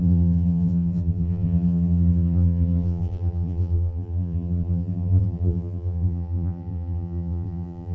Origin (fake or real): fake